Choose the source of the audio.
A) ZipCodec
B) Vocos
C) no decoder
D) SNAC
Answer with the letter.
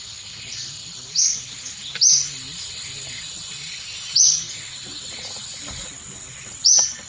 C